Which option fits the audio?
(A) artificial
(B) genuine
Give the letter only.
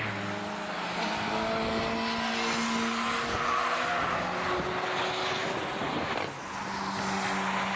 B